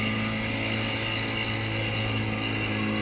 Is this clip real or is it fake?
real